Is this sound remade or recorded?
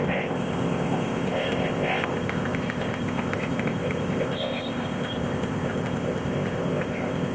remade